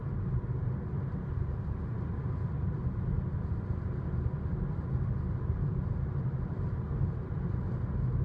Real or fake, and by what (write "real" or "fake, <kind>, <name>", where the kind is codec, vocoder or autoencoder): real